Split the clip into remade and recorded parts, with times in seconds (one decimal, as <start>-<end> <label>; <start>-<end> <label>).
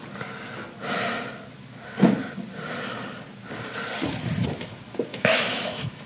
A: 0.0-5.1 recorded; 5.1-6.1 remade